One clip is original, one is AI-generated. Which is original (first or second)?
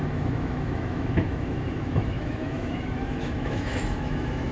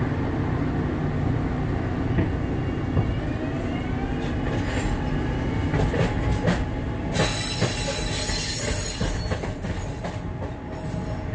second